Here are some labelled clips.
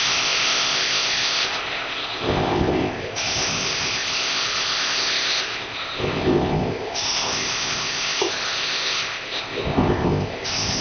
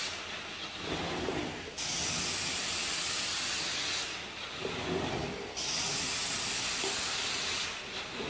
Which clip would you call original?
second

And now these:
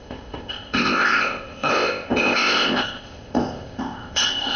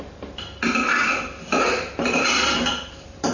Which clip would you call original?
second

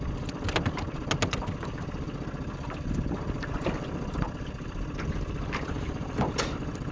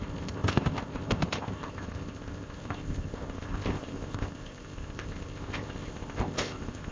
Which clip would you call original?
first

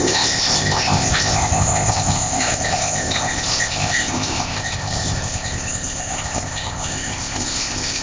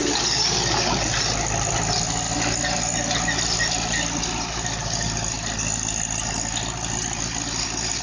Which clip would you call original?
second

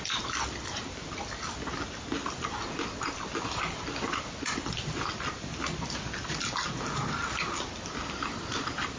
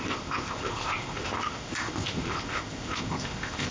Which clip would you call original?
first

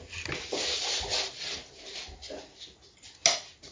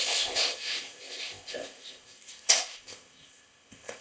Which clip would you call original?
first